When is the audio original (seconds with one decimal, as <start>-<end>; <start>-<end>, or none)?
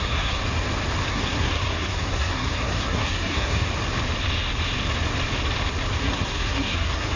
0.4-1.1; 3.7-6.0